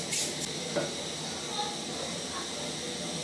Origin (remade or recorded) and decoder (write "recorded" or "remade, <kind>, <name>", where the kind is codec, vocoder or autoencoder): recorded